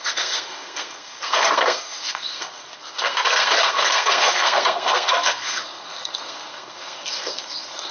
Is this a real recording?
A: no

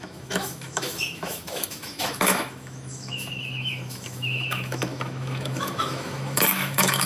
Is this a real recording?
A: no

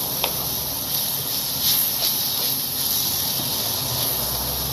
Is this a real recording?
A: yes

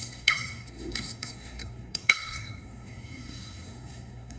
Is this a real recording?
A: no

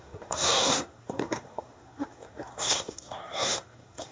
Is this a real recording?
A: no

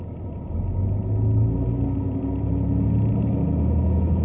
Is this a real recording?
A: yes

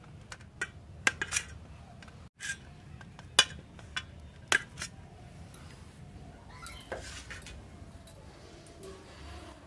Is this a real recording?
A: yes